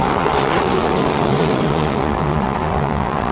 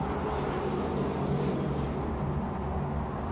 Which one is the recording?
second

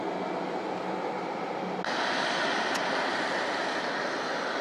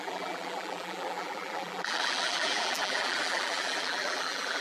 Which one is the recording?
first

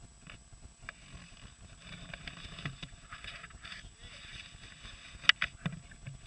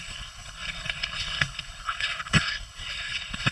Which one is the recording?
first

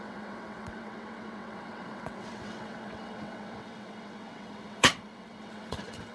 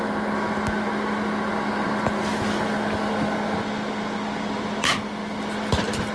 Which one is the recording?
second